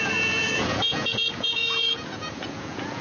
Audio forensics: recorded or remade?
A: remade